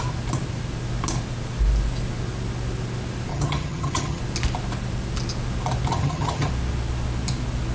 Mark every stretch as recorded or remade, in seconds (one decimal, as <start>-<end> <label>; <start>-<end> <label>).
0.0-3.3 recorded; 3.3-4.2 remade; 4.2-5.9 recorded; 5.9-6.5 remade; 6.5-7.7 recorded